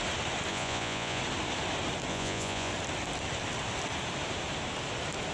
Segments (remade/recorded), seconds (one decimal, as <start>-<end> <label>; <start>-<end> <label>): 0.0-0.5 recorded; 0.5-1.2 remade; 1.2-2.1 recorded; 2.1-2.7 remade; 2.7-5.3 recorded